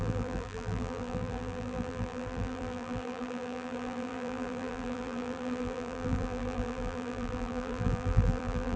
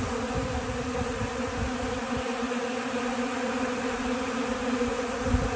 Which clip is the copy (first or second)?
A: first